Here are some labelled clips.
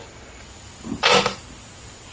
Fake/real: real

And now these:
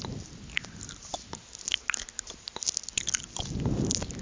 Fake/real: real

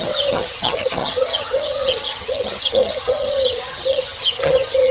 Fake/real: fake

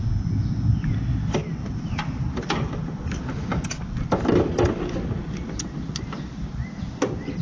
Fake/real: real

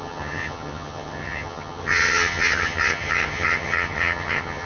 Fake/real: fake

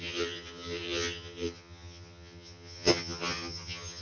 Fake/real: fake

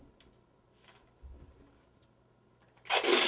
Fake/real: real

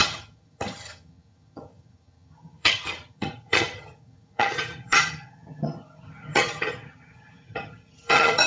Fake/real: fake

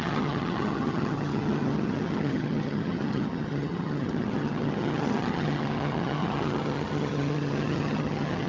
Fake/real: fake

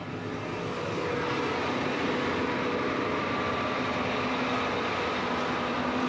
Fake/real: real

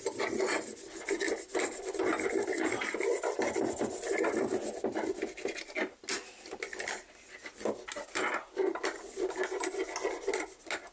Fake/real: real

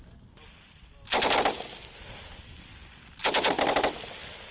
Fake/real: real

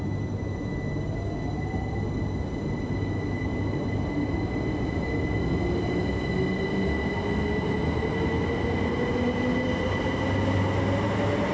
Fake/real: real